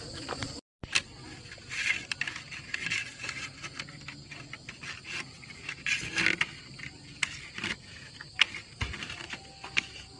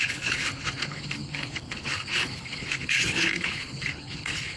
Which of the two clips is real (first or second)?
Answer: first